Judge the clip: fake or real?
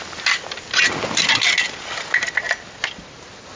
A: real